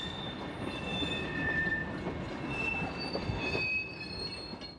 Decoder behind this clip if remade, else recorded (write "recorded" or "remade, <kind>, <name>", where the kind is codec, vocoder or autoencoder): remade, vocoder, BigVGAN v2